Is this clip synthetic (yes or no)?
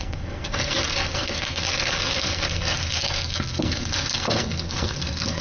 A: yes